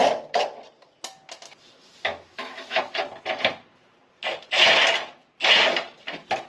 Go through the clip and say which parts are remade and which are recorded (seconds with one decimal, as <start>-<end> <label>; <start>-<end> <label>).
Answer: 0.0-1.6 recorded; 1.6-2.8 remade; 2.8-6.5 recorded